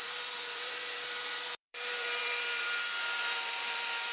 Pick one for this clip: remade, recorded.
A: remade